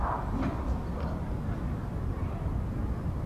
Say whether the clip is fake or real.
real